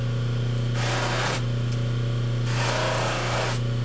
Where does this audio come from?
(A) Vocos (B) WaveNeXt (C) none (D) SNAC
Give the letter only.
C